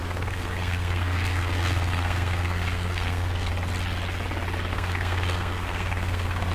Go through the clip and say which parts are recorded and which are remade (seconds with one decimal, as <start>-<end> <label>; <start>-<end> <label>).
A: 0.0-3.5 remade; 3.5-4.7 recorded; 4.7-6.5 remade